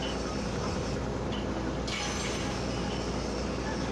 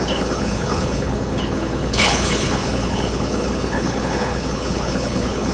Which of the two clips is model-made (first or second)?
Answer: second